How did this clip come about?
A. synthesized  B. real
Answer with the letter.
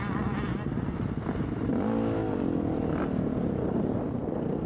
B